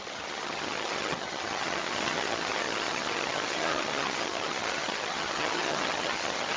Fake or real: fake